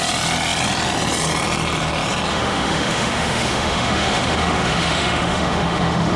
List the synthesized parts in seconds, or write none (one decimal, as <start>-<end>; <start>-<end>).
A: 2.3-6.2